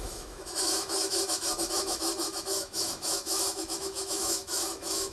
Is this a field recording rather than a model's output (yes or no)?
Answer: no